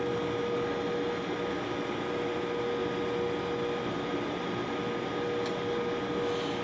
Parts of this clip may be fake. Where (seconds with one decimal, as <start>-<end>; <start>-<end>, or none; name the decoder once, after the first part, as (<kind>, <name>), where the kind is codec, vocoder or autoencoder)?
none